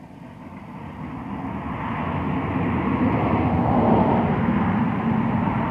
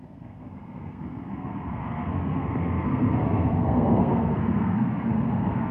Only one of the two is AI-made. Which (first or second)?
second